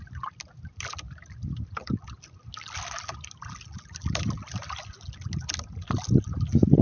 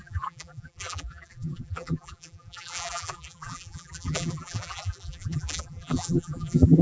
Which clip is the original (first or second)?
first